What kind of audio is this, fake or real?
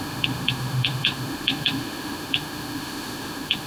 fake